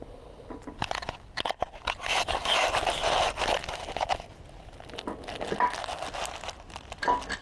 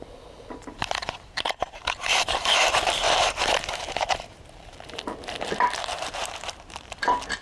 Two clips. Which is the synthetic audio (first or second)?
second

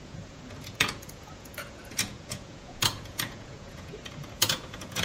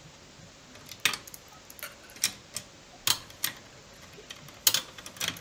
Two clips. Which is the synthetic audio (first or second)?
first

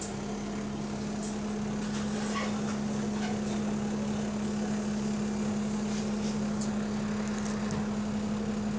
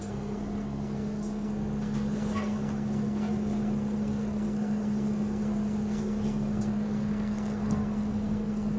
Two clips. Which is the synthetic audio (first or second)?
second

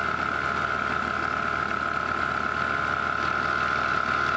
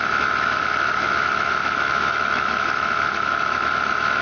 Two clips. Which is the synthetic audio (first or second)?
second